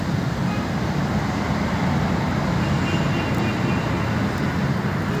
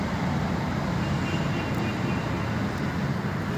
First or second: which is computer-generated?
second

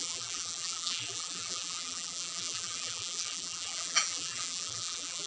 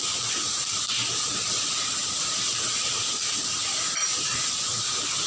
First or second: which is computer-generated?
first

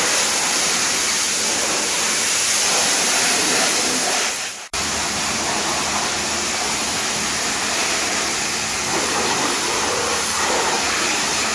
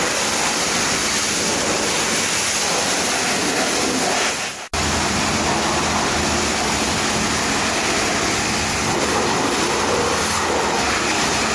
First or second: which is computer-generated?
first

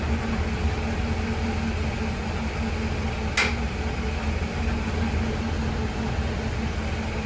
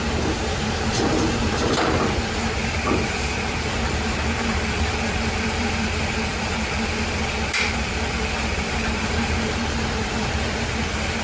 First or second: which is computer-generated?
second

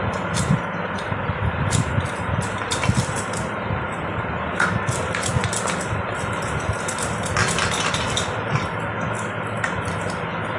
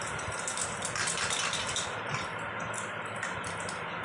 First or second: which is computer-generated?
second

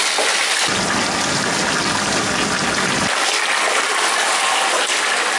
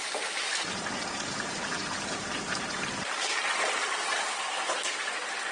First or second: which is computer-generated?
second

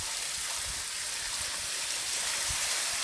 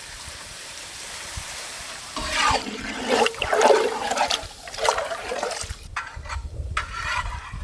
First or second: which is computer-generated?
second